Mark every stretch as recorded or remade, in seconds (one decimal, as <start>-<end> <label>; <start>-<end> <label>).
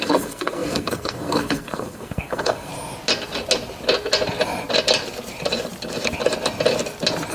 0.0-2.7 remade; 2.7-7.3 recorded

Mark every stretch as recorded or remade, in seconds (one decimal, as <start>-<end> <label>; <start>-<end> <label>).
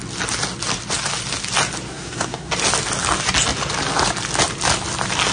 0.0-1.9 recorded; 1.9-2.5 remade; 2.5-5.3 recorded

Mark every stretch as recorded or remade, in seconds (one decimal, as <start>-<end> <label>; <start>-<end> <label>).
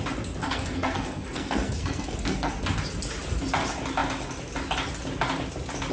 0.0-0.4 recorded; 0.4-2.5 remade; 2.5-5.9 recorded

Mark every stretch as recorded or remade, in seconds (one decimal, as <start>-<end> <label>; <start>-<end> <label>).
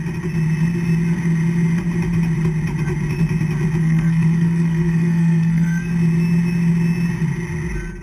0.0-3.8 recorded; 3.8-5.9 remade; 5.9-8.0 recorded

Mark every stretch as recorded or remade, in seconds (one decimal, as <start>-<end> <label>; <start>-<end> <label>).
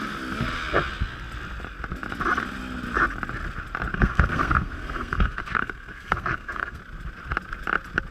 0.0-3.9 recorded; 3.9-6.8 remade; 6.8-8.1 recorded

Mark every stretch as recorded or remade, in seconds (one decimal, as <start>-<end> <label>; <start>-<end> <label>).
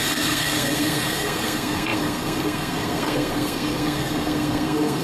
0.0-5.0 remade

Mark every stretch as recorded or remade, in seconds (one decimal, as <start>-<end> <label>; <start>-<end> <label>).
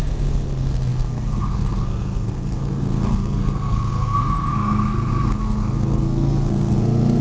0.0-7.2 remade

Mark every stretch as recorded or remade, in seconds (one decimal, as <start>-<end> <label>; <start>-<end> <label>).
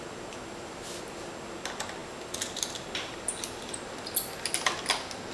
0.0-5.3 recorded